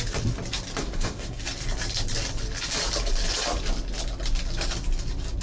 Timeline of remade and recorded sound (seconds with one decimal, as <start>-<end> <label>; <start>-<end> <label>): 0.0-0.8 recorded; 0.8-1.4 remade; 1.4-5.4 recorded